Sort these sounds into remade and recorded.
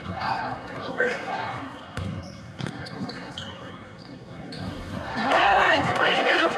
remade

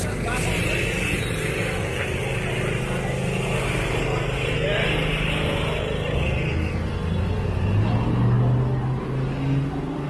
recorded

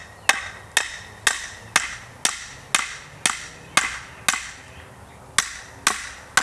recorded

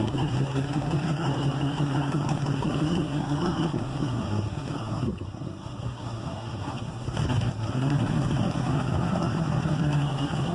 remade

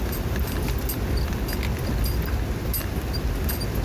recorded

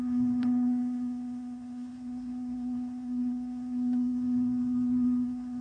remade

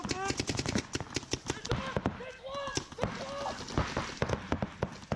recorded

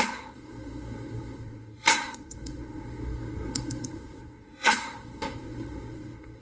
remade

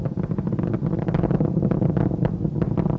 recorded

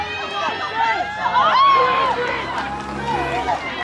recorded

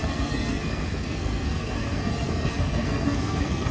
remade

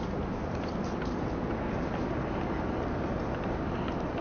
recorded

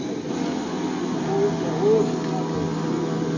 recorded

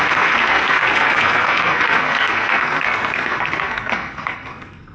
remade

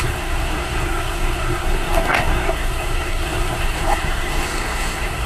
remade